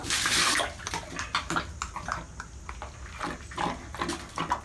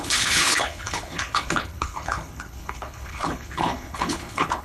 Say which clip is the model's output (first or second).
second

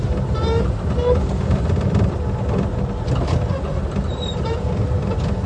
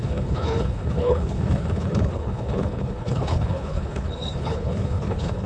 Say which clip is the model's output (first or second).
second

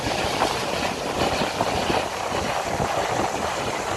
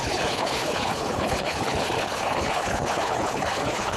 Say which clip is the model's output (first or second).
second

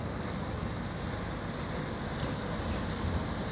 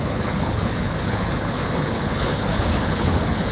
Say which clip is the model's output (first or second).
second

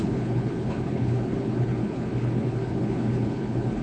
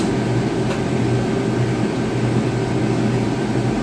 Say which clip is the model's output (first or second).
first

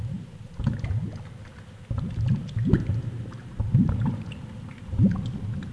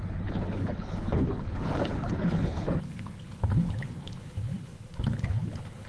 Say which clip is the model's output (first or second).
second